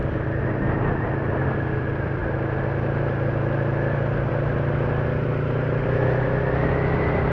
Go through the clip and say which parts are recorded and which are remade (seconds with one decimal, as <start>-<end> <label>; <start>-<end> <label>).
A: 0.0-7.3 recorded

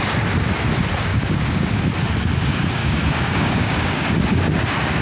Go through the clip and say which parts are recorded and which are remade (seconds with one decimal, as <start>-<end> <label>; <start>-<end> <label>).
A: 0.0-1.1 recorded; 1.1-1.8 remade; 1.8-2.8 recorded; 2.8-4.1 remade; 4.1-5.0 recorded

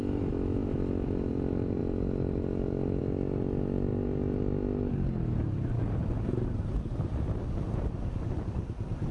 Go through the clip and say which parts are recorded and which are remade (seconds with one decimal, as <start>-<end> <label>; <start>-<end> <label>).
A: 0.0-9.1 recorded

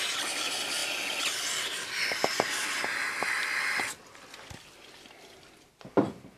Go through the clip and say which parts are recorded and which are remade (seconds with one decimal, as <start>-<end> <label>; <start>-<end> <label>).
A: 0.0-6.4 recorded